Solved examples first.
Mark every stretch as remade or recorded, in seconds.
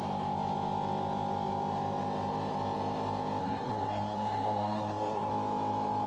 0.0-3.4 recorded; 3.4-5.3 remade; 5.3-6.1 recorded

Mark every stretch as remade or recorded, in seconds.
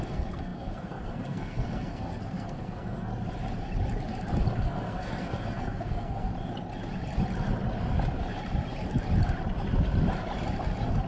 0.0-3.1 remade; 3.1-4.6 recorded; 4.6-6.3 remade; 6.3-11.1 recorded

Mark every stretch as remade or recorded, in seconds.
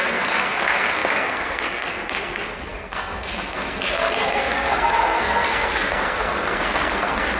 0.0-7.4 remade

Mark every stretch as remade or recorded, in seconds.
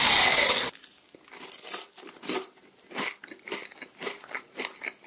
0.0-5.1 recorded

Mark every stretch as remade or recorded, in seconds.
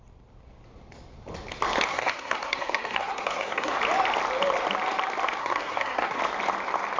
0.0-1.9 recorded; 1.9-3.8 remade; 3.8-5.4 recorded; 5.4-6.2 remade; 6.2-7.0 recorded